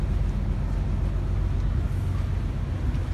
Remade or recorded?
recorded